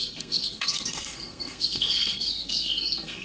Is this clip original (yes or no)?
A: no